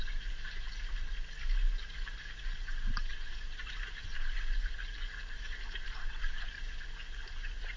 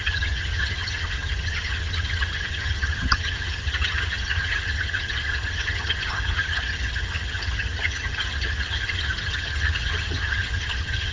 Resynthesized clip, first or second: second